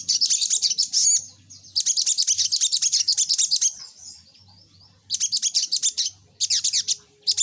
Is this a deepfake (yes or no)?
no